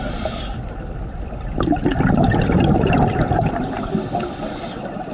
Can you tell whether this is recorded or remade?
remade